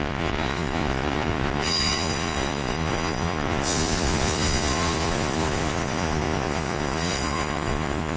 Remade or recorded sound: remade